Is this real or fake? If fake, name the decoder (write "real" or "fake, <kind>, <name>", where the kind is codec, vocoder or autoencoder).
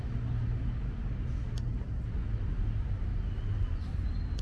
real